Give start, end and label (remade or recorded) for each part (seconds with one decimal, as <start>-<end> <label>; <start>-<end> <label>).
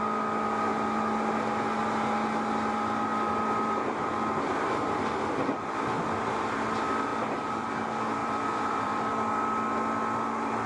0.0-7.1 recorded; 7.1-7.7 remade; 7.7-8.2 recorded; 8.2-9.0 remade; 9.0-10.7 recorded